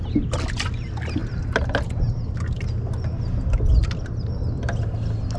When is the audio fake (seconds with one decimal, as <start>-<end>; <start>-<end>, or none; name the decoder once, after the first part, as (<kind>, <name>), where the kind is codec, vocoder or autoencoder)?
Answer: none